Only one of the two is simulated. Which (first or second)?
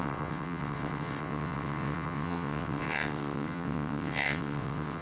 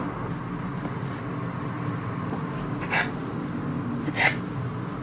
first